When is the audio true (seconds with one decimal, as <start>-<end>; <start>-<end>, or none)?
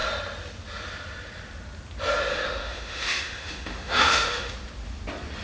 0.0-2.3; 4.5-5.4